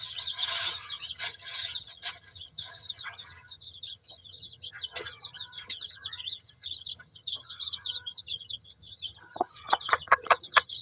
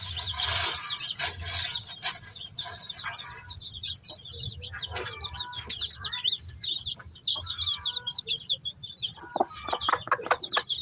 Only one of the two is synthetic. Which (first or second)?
first